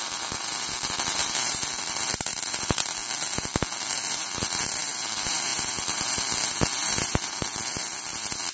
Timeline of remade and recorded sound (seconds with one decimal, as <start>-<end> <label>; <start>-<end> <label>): 0.0-3.0 remade; 3.0-3.9 recorded; 3.9-8.5 remade

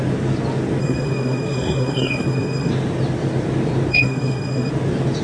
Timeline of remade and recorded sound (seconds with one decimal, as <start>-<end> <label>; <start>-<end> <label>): 0.0-0.8 recorded; 0.8-2.7 remade; 2.7-3.9 recorded; 3.9-4.7 remade; 4.7-5.2 recorded

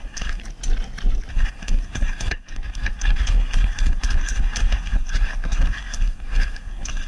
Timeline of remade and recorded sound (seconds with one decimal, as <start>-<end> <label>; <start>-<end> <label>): 0.0-0.4 remade; 0.4-1.3 recorded; 1.3-7.1 remade

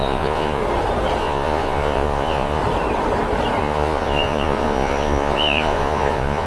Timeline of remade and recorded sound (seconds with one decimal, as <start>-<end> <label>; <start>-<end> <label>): 0.0-0.6 remade; 0.6-1.2 recorded; 1.2-2.6 remade; 2.6-3.6 recorded; 3.6-6.5 remade